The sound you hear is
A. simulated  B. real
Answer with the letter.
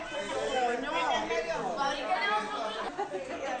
B